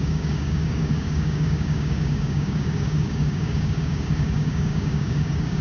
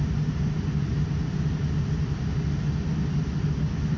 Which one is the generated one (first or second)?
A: first